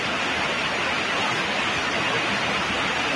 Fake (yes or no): no